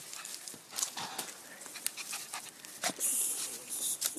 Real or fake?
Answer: real